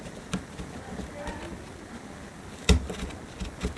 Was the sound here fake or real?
real